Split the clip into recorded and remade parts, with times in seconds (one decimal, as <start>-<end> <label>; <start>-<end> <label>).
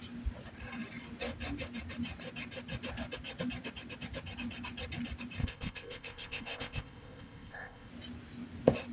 0.0-5.4 recorded; 5.4-7.9 remade; 7.9-8.9 recorded